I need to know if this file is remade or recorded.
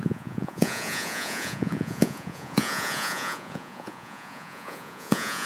remade